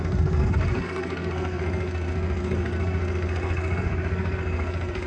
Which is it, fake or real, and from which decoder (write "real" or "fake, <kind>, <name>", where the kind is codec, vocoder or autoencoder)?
fake, codec, SNAC